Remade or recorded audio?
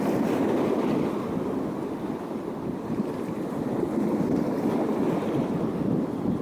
recorded